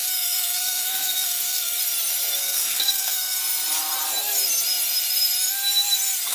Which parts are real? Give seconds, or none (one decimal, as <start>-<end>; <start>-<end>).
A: 1.8-2.4; 3.4-6.3